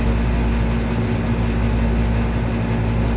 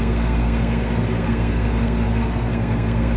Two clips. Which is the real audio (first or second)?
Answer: first